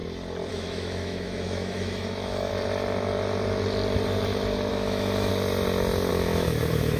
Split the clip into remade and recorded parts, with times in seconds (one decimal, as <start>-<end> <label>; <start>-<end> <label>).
0.0-0.5 recorded; 0.5-2.5 remade; 2.5-4.7 recorded; 4.7-5.3 remade; 5.3-6.1 recorded; 6.1-7.0 remade